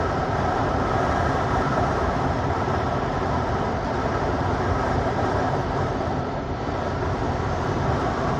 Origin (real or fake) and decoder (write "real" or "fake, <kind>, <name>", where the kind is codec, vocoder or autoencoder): fake, vocoder, BigVGAN v2